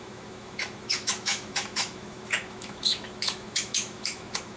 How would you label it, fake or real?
fake